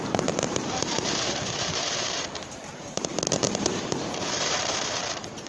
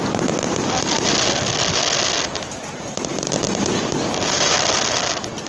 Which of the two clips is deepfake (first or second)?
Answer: first